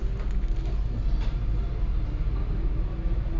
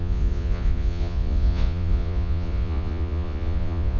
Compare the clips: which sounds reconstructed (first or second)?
second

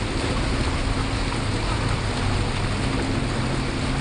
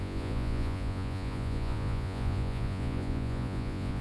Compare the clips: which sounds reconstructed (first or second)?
second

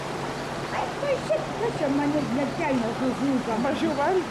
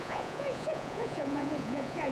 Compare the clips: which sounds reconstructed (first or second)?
second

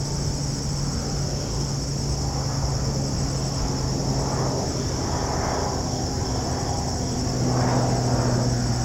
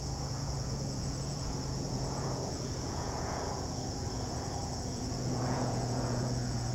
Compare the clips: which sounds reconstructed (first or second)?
second